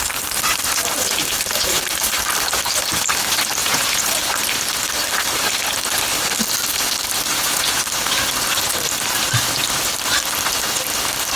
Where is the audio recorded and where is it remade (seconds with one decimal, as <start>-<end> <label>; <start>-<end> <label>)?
0.0-3.6 recorded; 3.6-4.2 remade; 4.2-7.3 recorded; 7.3-7.8 remade; 7.8-11.4 recorded